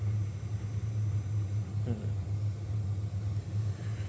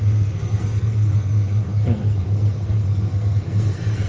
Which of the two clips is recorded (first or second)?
first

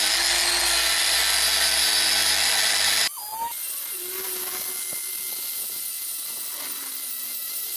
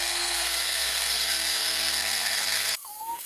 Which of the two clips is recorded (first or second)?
first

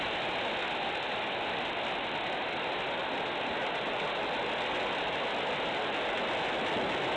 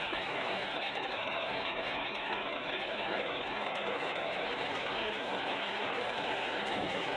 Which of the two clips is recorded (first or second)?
first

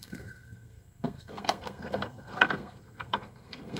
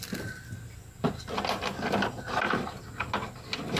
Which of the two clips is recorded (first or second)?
second